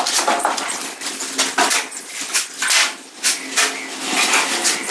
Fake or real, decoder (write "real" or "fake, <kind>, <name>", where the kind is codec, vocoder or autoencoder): real